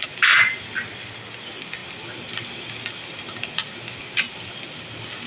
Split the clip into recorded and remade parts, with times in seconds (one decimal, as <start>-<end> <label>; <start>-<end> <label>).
0.0-5.3 recorded